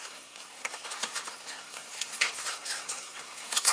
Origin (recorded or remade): remade